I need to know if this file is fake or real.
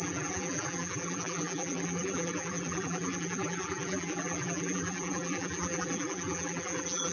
fake